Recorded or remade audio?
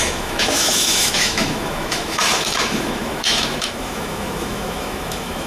remade